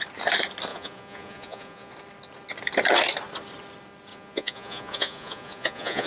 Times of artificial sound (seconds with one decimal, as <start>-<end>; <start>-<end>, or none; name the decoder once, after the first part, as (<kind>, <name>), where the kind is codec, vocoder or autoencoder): 0.7-1.9 (vocoder, Vocos); 4.1-6.1